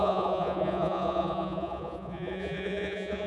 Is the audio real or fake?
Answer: fake